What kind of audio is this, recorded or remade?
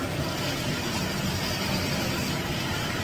recorded